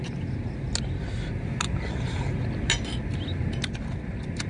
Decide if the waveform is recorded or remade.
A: recorded